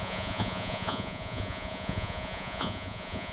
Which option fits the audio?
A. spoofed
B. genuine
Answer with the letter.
A